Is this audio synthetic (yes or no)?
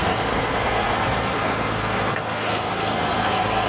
yes